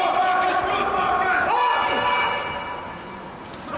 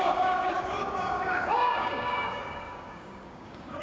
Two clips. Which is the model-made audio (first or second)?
second